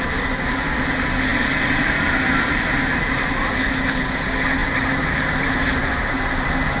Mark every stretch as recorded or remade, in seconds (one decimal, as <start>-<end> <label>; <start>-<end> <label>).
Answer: 0.0-4.6 recorded; 4.6-6.2 remade; 6.2-6.8 recorded